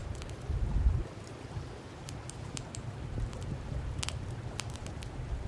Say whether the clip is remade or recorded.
recorded